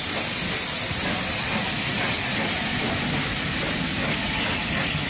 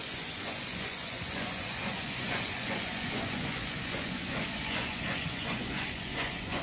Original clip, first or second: first